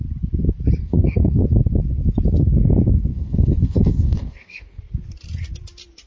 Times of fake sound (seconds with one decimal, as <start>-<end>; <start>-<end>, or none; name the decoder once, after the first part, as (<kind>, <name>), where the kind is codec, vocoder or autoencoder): 0.8-1.4 (codec, SNAC); 3.1-4.8

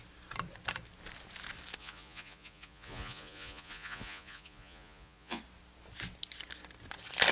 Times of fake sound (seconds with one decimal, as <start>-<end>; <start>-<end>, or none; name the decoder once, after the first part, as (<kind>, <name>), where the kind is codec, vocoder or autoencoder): 1.8-5.4 (vocoder, Vocos)

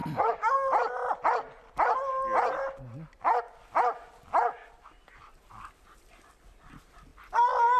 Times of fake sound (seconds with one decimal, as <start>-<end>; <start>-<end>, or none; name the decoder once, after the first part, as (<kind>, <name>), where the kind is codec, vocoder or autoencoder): none

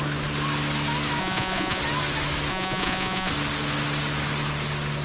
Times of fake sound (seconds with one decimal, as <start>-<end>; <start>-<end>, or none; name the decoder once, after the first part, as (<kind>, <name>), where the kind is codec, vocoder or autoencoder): 1.2-1.8 (vocoder, Vocos); 2.5-3.3

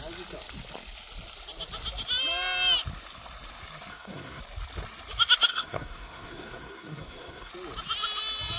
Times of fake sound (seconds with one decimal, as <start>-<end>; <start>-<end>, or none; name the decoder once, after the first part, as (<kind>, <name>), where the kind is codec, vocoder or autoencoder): 3.9-4.4 (codec, SNAC); 5.5-7.5

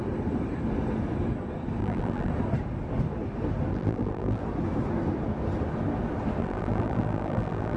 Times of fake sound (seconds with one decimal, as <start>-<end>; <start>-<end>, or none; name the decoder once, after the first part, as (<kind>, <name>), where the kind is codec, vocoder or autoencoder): 1.8-2.3 (vocoder, BigVGAN v2); 3.7-4.4; 6.4-7.8

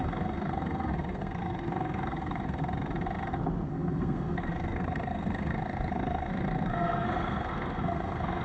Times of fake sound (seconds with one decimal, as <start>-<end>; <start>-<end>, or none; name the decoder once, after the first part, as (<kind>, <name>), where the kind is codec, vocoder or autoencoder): 0.0-2.6 (codec, SNAC); 3.7-8.4

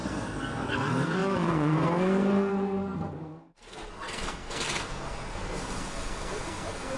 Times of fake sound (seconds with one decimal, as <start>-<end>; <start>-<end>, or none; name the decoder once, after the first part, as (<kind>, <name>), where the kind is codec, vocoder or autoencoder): 0.0-7.0 (codec, SNAC)